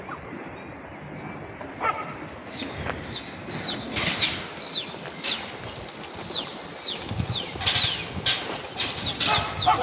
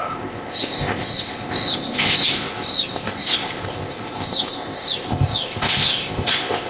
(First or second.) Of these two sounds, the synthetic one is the second